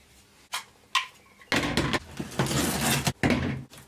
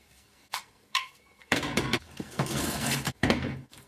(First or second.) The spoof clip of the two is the second